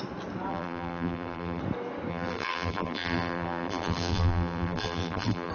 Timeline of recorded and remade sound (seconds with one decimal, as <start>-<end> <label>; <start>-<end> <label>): 0.0-0.5 recorded; 0.5-1.6 remade; 1.6-2.1 recorded; 2.1-5.5 remade